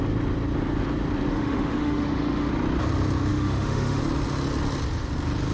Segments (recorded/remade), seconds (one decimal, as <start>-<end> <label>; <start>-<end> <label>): 0.0-1.3 recorded; 1.3-2.5 remade; 2.5-3.3 recorded; 3.3-4.0 remade; 4.0-5.5 recorded